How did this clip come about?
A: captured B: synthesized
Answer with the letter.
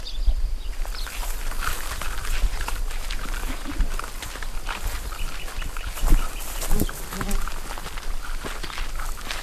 A